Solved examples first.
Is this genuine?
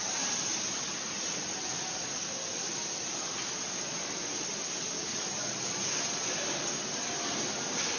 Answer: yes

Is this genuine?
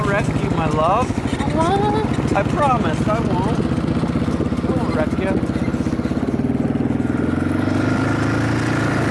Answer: yes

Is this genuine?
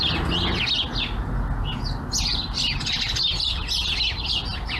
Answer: yes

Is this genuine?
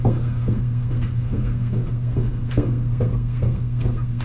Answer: no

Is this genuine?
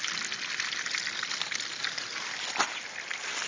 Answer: yes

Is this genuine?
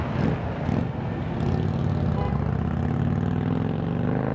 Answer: yes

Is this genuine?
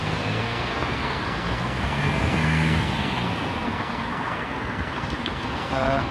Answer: no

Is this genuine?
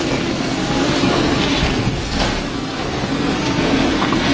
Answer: no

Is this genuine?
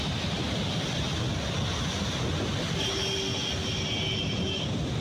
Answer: yes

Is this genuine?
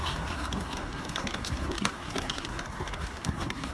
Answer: no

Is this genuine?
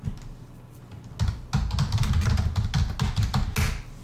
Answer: yes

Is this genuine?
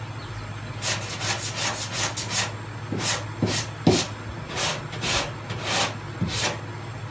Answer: yes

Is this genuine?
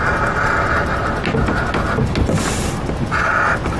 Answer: yes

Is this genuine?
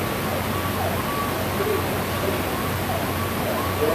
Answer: yes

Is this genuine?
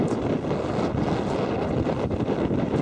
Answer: yes